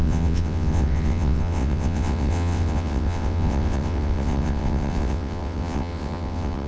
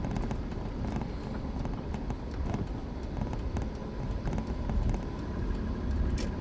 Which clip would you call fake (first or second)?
first